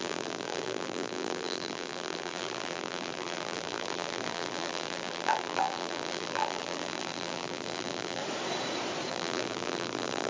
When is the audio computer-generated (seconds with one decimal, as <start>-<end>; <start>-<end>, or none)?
0.0-8.2; 9.1-10.3